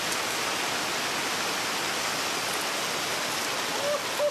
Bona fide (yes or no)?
yes